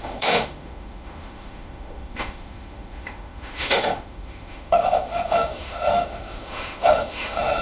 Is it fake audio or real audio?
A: fake